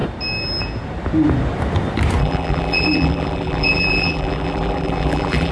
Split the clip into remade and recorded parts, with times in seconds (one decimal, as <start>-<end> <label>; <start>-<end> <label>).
0.0-2.2 recorded; 2.2-5.5 remade